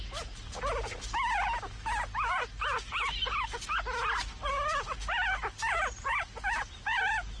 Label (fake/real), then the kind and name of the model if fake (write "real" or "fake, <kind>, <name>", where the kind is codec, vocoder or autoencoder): real